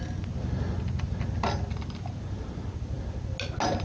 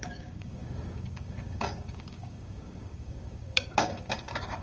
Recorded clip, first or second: first